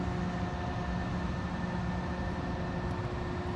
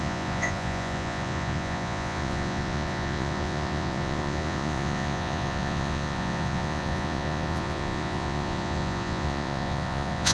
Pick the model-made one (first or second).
second